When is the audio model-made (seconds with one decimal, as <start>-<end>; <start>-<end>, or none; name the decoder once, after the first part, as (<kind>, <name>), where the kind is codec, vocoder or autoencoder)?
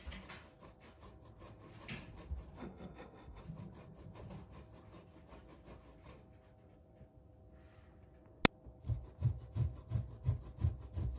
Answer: 2.6-3.4 (codec, SNAC)